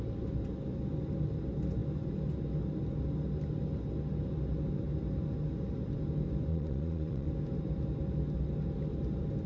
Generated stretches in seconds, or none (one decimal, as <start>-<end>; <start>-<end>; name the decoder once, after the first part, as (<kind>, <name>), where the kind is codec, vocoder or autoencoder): 6.5-7.3 (vocoder, Vocos)